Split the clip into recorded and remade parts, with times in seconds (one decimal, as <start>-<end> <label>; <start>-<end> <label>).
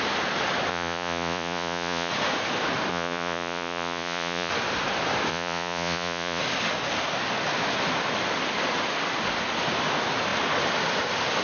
0.0-0.7 recorded; 0.7-2.1 remade; 2.1-2.9 recorded; 2.9-4.5 remade; 4.5-5.3 recorded; 5.3-6.4 remade; 6.4-11.4 recorded